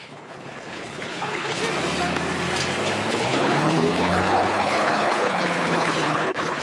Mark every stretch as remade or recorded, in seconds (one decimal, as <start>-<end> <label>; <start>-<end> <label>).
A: 0.0-1.6 remade; 1.6-3.1 recorded; 3.1-6.6 remade